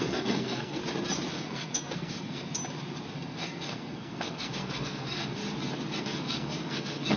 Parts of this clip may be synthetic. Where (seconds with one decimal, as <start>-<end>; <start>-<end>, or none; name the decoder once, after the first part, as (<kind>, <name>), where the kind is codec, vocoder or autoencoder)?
0.0-0.8 (codec, SNAC); 1.3-2.6; 3.1-5.4; 6.0-7.2